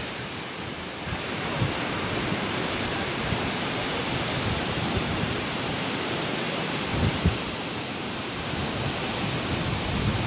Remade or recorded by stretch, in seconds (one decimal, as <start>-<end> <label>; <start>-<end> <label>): 0.0-4.0 remade; 4.0-4.6 recorded; 4.6-6.9 remade; 6.9-8.0 recorded; 8.0-10.3 remade